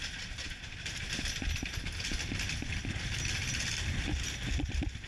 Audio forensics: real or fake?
real